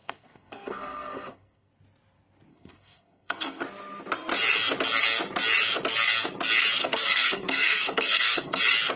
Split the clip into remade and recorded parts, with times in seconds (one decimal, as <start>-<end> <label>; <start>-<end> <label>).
0.0-1.7 remade; 1.7-2.5 recorded; 2.5-3.6 remade; 3.6-6.8 recorded; 6.8-8.6 remade; 8.6-9.0 recorded